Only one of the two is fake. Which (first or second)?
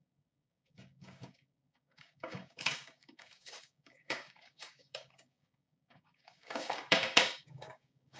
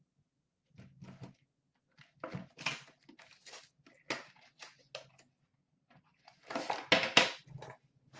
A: first